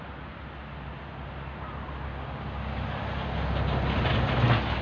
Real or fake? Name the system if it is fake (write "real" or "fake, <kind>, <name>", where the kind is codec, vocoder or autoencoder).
real